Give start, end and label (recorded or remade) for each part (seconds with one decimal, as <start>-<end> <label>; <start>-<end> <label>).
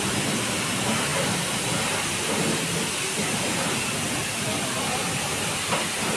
0.0-6.2 recorded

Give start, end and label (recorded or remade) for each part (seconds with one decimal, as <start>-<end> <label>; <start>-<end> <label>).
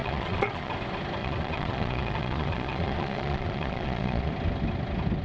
0.0-0.7 remade; 0.7-1.2 recorded; 1.2-4.3 remade; 4.3-5.2 recorded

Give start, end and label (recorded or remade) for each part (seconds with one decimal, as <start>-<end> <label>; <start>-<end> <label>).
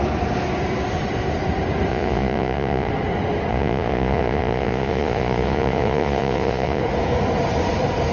0.0-1.9 recorded; 1.9-2.9 remade; 2.9-3.5 recorded; 3.5-6.8 remade; 6.8-8.1 recorded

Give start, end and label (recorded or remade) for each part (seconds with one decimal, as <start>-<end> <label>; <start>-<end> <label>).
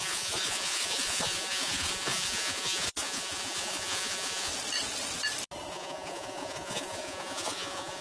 0.0-4.5 remade; 4.5-5.7 recorded; 5.7-8.0 remade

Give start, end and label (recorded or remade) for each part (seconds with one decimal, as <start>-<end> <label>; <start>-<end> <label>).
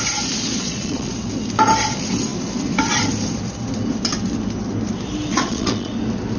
0.0-0.5 recorded; 0.5-1.1 remade; 1.1-5.3 recorded; 5.3-5.9 remade; 5.9-6.4 recorded